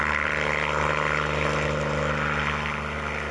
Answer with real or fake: real